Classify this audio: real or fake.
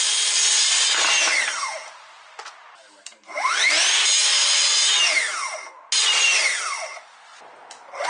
real